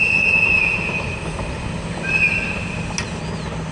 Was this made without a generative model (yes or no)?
yes